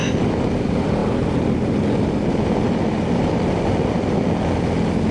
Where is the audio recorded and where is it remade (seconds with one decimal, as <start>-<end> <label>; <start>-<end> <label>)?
0.0-5.1 recorded